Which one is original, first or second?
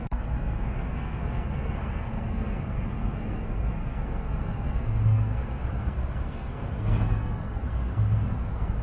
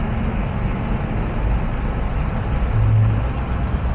second